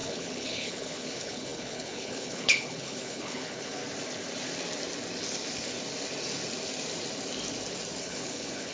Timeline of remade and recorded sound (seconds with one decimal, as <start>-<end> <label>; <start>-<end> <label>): 0.0-3.8 remade; 3.8-8.0 recorded; 8.0-8.7 remade